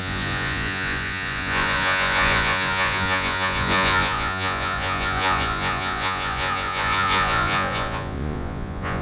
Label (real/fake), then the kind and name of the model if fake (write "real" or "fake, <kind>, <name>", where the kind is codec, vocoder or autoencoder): fake, vocoder, Vocos